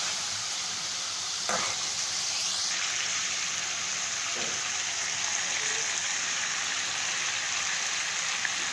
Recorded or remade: recorded